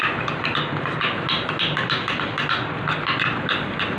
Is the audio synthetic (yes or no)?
no